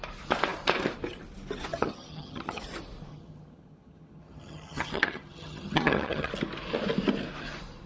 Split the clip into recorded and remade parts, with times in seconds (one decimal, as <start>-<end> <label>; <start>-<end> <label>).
0.0-1.7 recorded; 1.7-2.6 remade; 2.6-3.1 recorded; 3.1-6.3 remade; 6.3-7.9 recorded